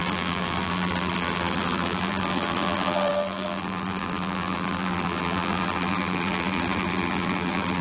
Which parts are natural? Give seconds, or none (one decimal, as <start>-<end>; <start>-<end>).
none